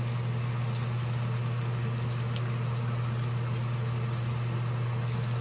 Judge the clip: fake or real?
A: real